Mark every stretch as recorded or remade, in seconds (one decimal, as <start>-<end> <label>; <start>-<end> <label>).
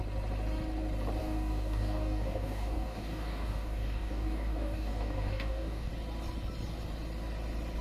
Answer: 0.0-1.2 recorded; 1.2-5.9 remade; 5.9-7.8 recorded